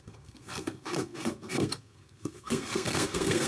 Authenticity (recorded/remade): remade